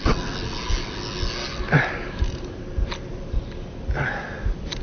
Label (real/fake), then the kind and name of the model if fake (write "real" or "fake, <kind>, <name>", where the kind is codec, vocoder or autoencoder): real